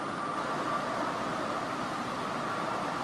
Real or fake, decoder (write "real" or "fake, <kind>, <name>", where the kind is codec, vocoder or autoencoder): real